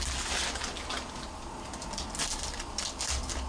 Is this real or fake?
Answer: real